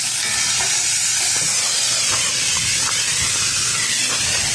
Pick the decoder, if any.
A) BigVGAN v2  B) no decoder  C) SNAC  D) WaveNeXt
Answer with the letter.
B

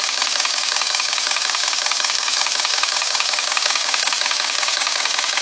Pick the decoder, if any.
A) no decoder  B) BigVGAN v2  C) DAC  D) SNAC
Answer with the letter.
C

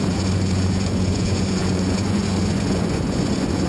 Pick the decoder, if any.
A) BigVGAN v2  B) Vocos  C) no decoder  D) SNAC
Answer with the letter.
B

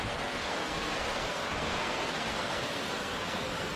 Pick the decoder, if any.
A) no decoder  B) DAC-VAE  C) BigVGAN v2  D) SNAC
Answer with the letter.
D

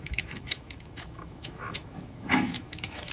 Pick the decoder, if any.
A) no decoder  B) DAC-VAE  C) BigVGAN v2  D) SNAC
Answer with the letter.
B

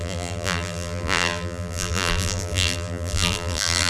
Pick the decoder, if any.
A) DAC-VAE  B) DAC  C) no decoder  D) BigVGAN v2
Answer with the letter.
D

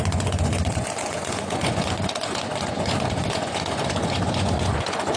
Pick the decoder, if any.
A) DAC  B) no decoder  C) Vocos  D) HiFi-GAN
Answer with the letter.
C